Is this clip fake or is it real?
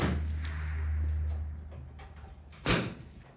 real